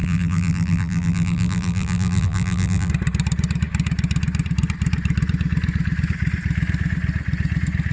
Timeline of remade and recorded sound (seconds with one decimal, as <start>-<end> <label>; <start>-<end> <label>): 0.0-2.9 remade; 2.9-7.9 recorded

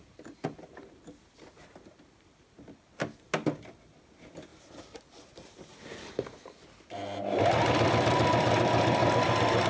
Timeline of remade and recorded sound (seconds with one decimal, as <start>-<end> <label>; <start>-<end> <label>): 0.0-4.5 recorded; 4.5-6.2 remade; 6.2-9.7 recorded

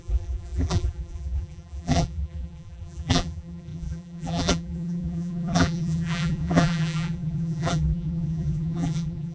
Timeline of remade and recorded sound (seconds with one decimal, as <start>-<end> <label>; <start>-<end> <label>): 0.0-9.3 remade

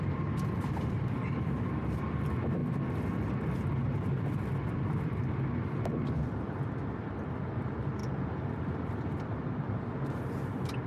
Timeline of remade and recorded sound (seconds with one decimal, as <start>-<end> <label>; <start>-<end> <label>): 0.0-10.9 remade

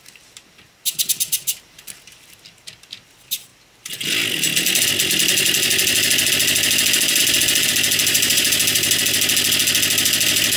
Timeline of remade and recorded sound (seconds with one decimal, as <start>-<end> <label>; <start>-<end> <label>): 0.0-8.1 recorded; 8.1-9.0 remade; 9.0-10.6 recorded

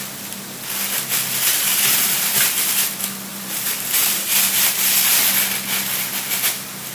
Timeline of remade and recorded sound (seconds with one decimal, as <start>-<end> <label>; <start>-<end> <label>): 0.0-3.3 recorded; 3.3-5.0 remade; 5.0-6.9 recorded

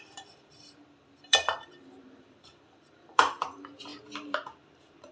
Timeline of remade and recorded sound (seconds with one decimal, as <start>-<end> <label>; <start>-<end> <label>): 0.0-3.9 remade; 3.9-5.1 recorded